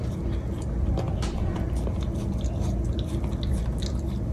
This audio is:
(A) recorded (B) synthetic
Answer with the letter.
A